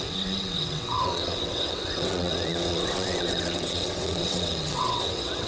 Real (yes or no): no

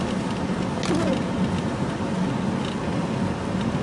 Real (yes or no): yes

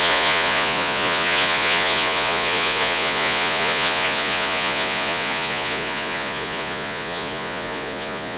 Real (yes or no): no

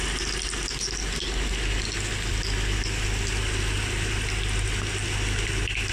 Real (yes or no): yes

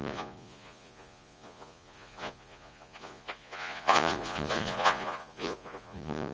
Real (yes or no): no